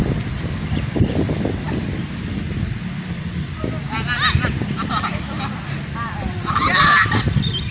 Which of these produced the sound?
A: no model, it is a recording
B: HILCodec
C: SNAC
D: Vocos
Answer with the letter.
A